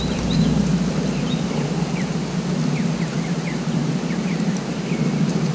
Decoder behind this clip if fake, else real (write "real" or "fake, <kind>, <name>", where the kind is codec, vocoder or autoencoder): real